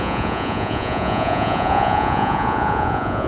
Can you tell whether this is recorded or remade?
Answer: remade